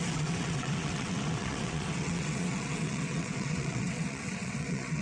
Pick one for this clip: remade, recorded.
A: remade